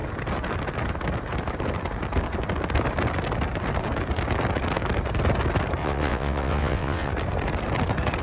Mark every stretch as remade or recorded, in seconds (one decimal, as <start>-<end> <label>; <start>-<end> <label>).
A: 0.0-5.8 recorded; 5.8-7.1 remade; 7.1-8.2 recorded